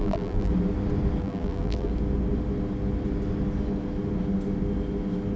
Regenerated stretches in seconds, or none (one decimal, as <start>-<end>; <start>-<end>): 0.0-0.5; 1.2-1.9